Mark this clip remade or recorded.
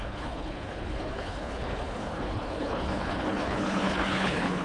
remade